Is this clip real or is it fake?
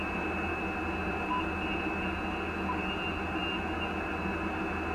real